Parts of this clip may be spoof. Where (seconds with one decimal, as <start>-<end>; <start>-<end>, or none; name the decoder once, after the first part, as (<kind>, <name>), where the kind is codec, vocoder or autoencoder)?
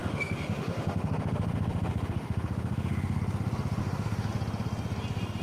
0.0-3.2 (autoencoder, DAC-VAE); 3.8-4.3